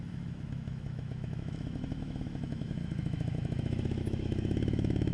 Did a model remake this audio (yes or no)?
yes